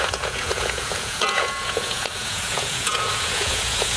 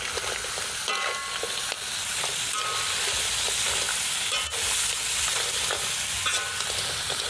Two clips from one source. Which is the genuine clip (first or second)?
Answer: second